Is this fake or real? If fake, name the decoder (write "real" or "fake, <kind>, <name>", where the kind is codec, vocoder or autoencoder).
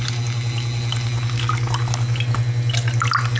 real